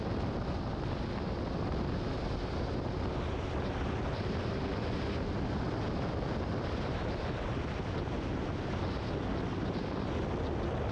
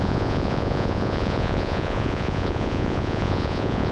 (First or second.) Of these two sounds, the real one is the first